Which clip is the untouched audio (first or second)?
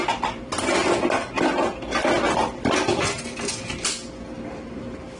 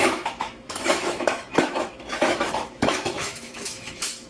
first